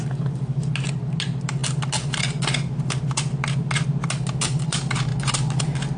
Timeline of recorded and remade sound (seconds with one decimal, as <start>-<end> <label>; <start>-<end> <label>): 0.0-6.0 recorded